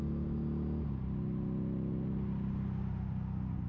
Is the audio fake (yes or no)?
no